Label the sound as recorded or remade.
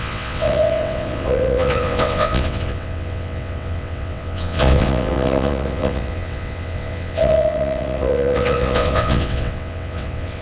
remade